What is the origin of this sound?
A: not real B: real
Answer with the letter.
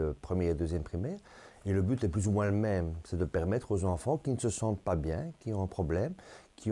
B